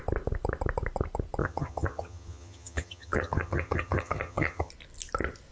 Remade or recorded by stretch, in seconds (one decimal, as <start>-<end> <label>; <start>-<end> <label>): 0.0-1.4 recorded; 1.4-4.7 remade; 4.7-5.5 recorded